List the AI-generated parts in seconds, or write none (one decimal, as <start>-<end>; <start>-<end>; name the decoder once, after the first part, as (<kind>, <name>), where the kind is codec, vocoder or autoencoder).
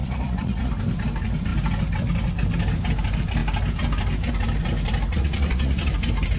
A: 0.0-0.7 (vocoder, Vocos); 5.1-5.9